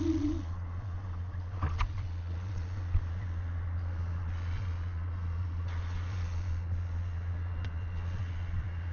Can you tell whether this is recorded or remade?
remade